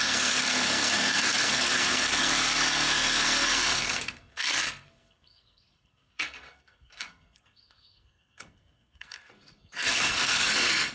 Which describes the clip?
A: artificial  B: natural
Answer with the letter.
A